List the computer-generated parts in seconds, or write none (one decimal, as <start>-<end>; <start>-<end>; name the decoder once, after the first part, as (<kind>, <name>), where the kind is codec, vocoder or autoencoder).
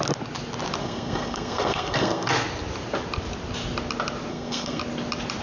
0.8-2.3 (codec, SNAC); 4.3-4.8